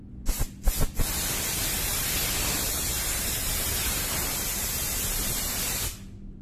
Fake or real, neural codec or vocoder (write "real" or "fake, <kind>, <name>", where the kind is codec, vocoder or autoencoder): real